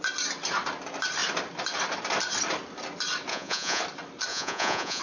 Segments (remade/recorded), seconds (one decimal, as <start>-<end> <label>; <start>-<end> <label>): 0.0-3.3 recorded; 3.3-3.8 remade; 3.8-4.3 recorded; 4.3-5.0 remade